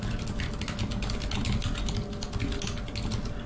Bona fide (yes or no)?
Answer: yes